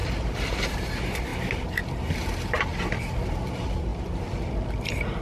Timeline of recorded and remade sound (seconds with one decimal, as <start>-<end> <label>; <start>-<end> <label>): 0.0-2.7 remade; 2.7-3.3 recorded; 3.3-3.9 remade; 3.9-5.2 recorded